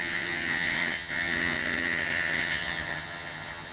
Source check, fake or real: fake